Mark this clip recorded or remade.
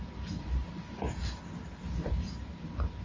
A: remade